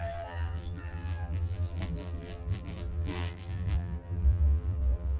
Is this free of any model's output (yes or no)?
no